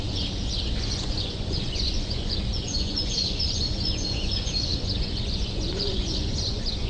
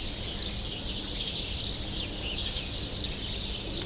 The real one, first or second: second